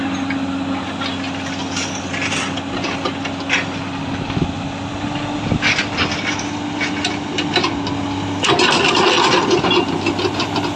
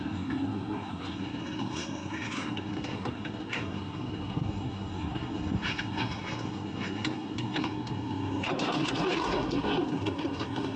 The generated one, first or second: second